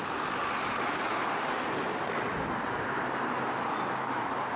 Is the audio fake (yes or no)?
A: no